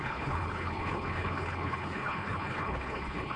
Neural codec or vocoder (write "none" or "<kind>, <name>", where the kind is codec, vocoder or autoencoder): codec, HILCodec